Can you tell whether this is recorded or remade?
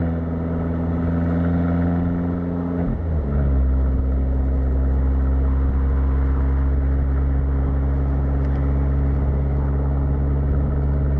recorded